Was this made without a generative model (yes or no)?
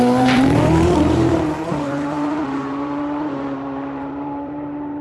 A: no